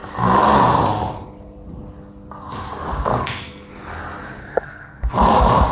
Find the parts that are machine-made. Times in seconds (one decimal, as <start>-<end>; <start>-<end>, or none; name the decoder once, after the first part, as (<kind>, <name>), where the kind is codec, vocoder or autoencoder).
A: 2.9-3.7 (codec, SNAC); 4.4-5.1